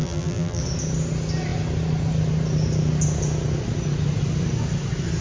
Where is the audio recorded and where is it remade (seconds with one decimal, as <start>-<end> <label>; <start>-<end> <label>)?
0.0-0.6 remade; 0.6-5.2 recorded